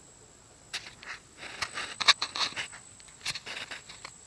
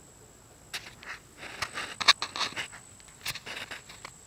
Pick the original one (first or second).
second